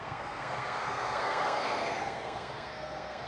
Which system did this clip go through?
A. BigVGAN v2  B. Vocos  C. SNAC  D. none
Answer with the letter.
C